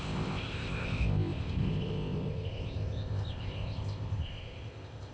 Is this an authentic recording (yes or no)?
no